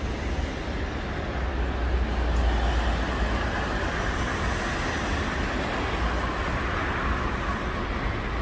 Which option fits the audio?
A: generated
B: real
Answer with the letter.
B